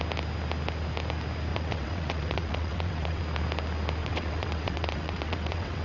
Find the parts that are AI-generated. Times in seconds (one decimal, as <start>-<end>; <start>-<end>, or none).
1.5-3.2; 4.0-5.8